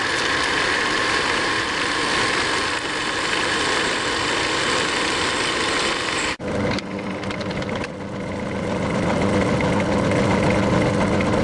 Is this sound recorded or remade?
recorded